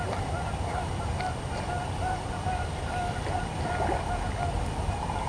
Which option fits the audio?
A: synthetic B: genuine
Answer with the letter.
B